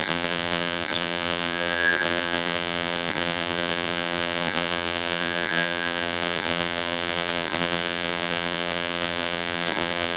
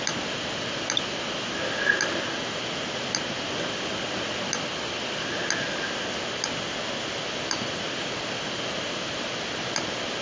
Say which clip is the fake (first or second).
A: first